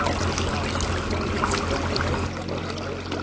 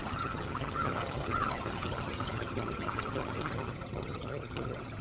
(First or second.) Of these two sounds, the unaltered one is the first